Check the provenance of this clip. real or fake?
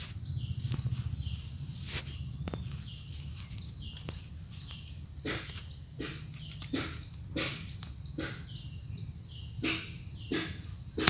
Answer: real